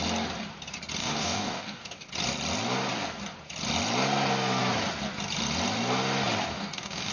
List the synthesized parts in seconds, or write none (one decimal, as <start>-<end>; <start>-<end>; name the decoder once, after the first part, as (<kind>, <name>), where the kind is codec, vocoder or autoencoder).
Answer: 1.0-2.1 (codec, DAC); 6.5-7.1

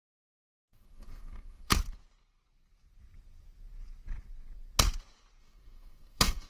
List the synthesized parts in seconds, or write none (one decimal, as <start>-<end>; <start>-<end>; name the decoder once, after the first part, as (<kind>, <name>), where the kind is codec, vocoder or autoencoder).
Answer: 0.0-1.7 (codec, DAC); 5.4-6.5

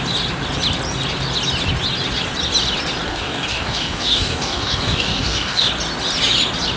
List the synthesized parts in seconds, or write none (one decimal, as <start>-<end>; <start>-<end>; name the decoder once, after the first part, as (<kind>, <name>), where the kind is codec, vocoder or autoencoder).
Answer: 3.1-5.7 (codec, DAC)

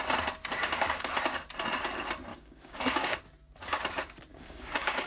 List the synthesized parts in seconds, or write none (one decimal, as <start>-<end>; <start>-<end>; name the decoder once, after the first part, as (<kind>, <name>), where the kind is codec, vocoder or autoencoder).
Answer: 0.6-1.1 (codec, DAC); 2.3-3.2; 4.3-5.1